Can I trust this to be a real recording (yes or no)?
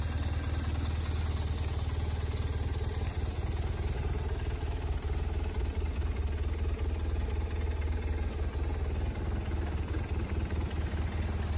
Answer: yes